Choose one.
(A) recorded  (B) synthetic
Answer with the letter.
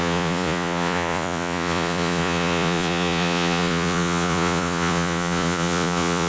B